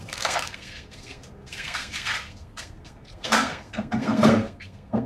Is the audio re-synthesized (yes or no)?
yes